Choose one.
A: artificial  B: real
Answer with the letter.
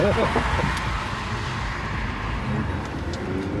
B